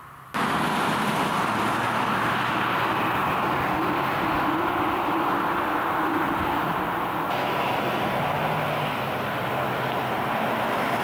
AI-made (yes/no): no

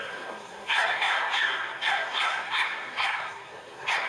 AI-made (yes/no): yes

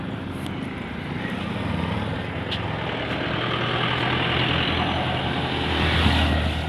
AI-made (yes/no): no